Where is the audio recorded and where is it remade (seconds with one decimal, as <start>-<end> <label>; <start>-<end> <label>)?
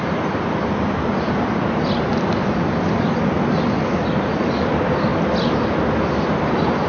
0.0-6.9 recorded